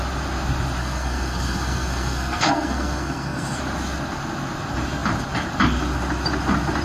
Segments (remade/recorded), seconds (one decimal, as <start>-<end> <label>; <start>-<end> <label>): 0.0-0.8 recorded; 0.8-3.6 remade; 3.6-6.8 recorded